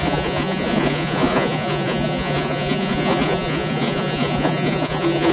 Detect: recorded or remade remade